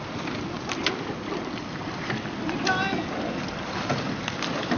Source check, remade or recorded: recorded